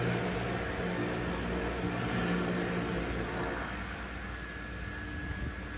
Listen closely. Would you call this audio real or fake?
real